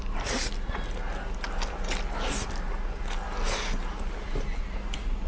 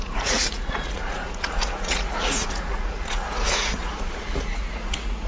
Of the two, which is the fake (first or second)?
second